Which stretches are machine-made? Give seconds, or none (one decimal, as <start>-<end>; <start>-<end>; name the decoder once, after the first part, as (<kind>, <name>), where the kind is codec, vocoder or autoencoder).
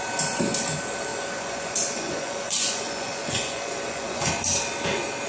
1.1-4.3 (vocoder, Vocos)